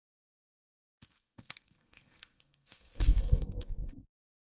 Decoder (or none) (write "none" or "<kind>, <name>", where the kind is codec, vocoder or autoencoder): codec, SNAC